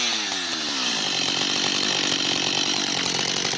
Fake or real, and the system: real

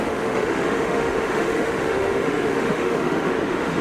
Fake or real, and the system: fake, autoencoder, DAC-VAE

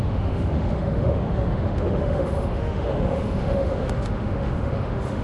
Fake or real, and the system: fake, autoencoder, DAC-VAE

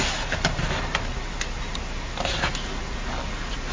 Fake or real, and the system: real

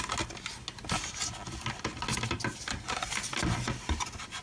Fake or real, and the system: real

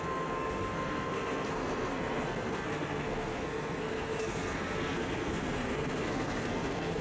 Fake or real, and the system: fake, codec, SNAC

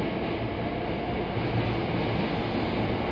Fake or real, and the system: real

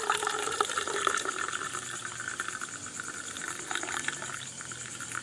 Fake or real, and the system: real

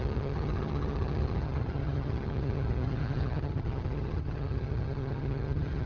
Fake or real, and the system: fake, vocoder, HiFi-GAN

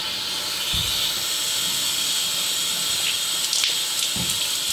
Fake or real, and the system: real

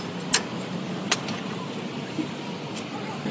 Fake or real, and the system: real